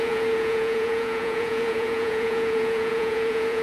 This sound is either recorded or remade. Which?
remade